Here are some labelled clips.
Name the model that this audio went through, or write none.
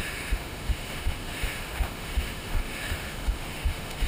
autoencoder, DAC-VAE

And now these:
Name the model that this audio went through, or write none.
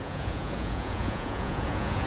vocoder, Vocos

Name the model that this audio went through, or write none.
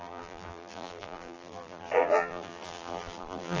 vocoder, BigVGAN v2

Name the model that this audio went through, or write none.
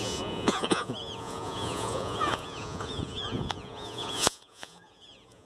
vocoder, Vocos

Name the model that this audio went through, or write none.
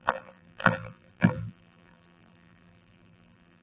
vocoder, BigVGAN v2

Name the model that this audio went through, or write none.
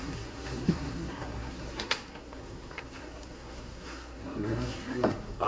codec, SNAC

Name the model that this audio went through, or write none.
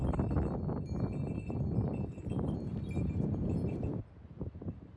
none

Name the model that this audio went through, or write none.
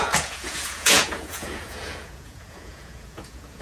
vocoder, Vocos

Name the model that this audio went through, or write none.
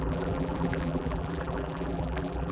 vocoder, BigVGAN v2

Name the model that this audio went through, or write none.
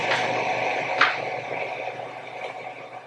none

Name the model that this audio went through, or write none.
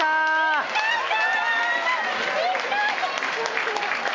none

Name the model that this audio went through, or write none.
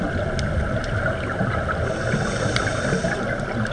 none